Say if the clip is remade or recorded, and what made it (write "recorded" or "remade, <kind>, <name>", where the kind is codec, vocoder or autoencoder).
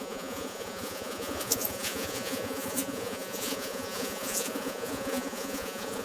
remade, vocoder, Vocos